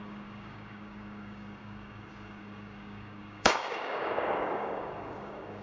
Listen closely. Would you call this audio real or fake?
fake